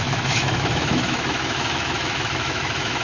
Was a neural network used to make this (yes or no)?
yes